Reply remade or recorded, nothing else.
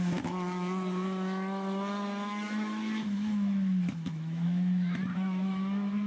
remade